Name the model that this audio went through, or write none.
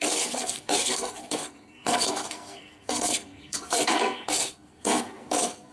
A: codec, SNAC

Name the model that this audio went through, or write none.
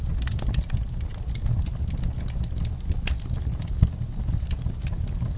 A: none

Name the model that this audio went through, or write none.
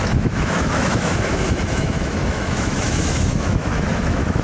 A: autoencoder, DAC-VAE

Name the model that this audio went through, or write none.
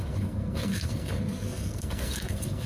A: codec, SNAC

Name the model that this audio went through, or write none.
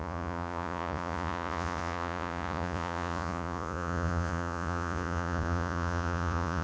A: vocoder, Vocos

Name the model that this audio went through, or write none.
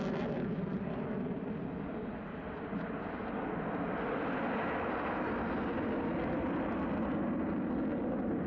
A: none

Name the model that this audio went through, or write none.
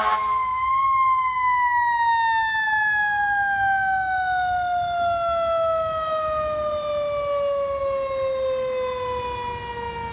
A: none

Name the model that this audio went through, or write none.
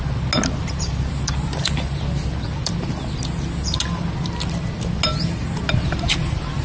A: none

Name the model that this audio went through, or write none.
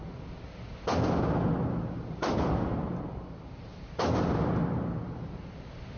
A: none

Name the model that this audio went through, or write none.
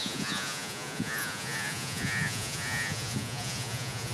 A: vocoder, Vocos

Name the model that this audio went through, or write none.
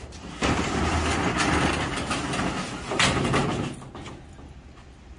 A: none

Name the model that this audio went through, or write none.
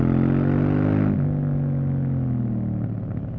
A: none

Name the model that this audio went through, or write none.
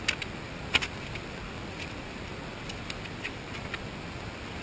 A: none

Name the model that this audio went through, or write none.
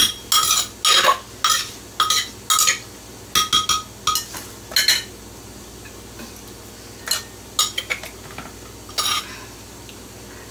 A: none